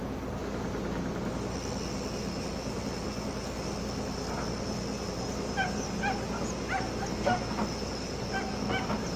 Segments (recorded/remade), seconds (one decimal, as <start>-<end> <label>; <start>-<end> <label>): 0.0-9.2 recorded